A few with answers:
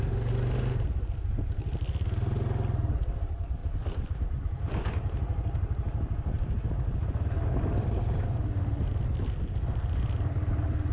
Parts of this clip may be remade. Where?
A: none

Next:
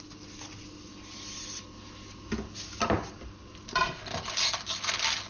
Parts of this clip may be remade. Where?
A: none

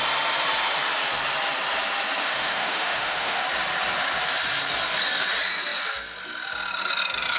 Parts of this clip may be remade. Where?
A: 2.2-3.4 (autoencoder, DAC-VAE)

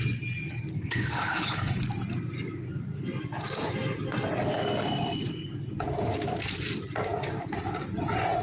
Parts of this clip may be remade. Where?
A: 0.7-1.8 (codec, HILCodec)